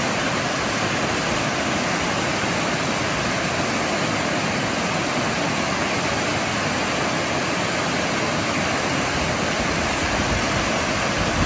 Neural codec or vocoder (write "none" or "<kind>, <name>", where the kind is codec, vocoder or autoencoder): none